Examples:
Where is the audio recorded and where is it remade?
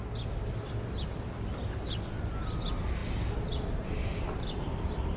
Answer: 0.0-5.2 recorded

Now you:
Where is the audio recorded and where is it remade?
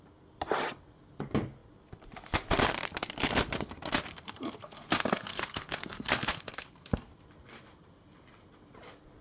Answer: 0.0-4.1 recorded; 4.1-7.1 remade; 7.1-9.2 recorded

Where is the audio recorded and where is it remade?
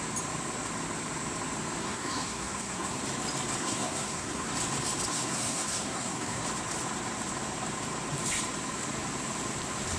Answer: 0.0-1.8 recorded; 1.8-3.0 remade; 3.0-3.6 recorded; 3.6-4.5 remade; 4.5-5.1 recorded; 5.1-6.4 remade; 6.4-10.0 recorded